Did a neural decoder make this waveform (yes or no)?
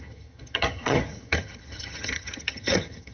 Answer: yes